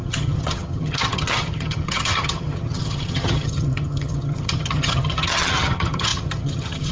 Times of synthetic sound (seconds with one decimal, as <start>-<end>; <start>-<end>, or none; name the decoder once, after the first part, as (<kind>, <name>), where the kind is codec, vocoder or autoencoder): 0.0-6.9 (vocoder, HiFi-GAN)